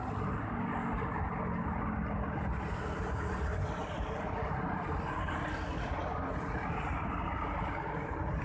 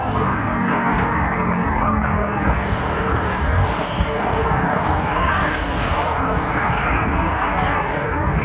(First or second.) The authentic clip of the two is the first